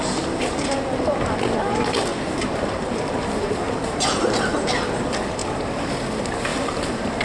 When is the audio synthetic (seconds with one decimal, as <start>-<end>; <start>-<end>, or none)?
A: 2.1-4.8; 6.5-7.2